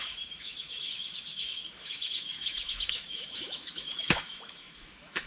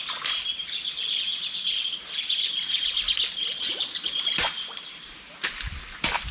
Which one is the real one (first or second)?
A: second